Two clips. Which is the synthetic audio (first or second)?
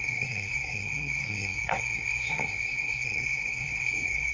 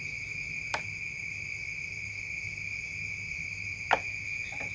first